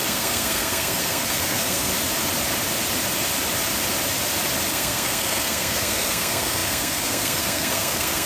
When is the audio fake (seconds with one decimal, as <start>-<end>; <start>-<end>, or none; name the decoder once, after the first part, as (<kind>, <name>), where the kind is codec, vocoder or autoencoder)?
0.0-1.9 (codec, SNAC); 4.7-8.3